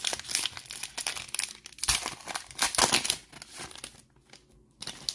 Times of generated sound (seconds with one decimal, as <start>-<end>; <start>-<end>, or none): none